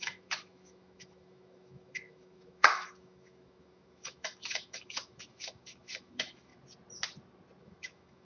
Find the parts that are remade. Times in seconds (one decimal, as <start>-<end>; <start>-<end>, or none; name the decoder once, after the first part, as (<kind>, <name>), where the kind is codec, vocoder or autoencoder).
0.0-6.5 (autoencoder, DAC-VAE); 7.6-8.2